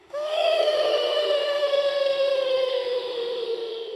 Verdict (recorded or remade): remade